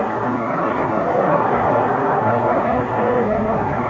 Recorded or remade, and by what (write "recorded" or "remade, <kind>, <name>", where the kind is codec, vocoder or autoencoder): remade, codec, SNAC